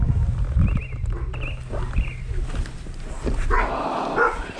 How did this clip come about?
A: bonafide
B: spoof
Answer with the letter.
A